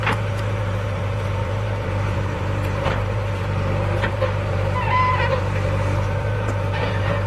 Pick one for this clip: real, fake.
fake